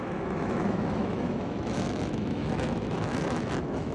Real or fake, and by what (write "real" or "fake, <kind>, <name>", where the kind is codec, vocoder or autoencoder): fake, autoencoder, DAC-VAE